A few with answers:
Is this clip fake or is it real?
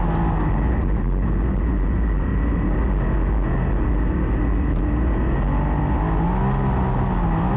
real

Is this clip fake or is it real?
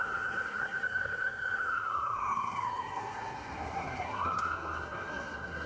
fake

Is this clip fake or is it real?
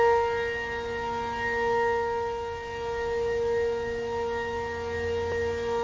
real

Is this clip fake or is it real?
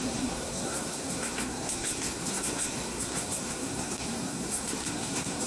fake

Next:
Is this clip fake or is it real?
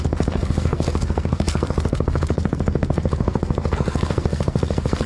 fake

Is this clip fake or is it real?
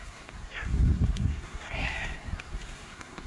fake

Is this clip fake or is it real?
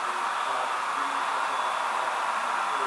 real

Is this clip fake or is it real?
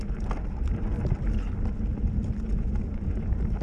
real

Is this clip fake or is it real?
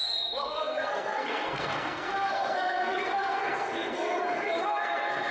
fake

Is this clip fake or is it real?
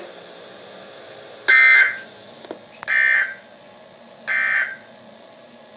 real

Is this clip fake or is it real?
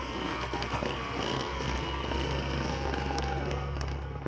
fake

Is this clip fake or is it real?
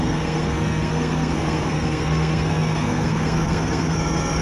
fake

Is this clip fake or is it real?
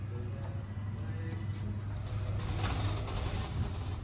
real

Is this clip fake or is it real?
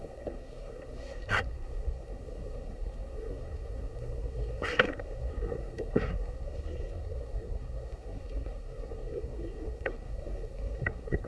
fake